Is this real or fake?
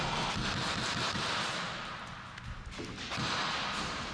real